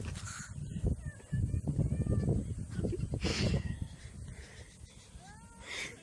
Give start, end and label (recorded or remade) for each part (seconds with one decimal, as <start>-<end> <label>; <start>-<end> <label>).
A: 0.0-3.3 recorded; 3.3-4.0 remade; 4.0-6.0 recorded

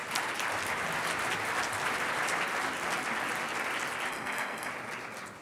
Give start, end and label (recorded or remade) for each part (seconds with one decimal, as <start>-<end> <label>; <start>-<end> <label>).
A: 0.0-4.1 recorded; 4.1-4.7 remade; 4.7-5.4 recorded

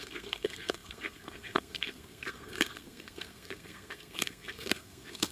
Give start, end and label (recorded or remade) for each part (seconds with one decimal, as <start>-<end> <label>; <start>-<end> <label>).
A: 0.0-5.3 remade

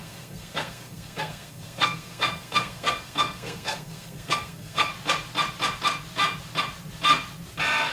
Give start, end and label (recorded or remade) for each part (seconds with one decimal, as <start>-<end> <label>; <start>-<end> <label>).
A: 0.0-4.9 remade; 4.9-7.9 recorded

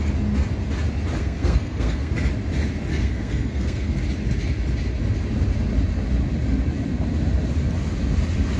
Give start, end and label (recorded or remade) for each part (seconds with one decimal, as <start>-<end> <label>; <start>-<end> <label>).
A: 0.0-1.2 recorded; 1.2-2.1 remade; 2.1-2.9 recorded; 2.9-4.0 remade; 4.0-8.6 recorded

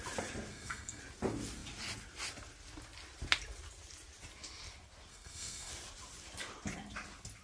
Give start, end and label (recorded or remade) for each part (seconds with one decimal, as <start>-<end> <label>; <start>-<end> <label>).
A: 0.0-0.5 recorded; 0.5-1.0 remade; 1.0-5.1 recorded; 5.1-5.7 remade; 5.7-7.4 recorded

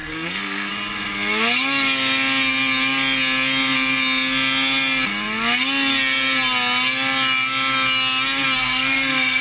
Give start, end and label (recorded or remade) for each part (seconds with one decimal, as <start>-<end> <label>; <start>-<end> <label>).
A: 0.0-0.7 remade; 0.7-8.6 recorded; 8.6-9.4 remade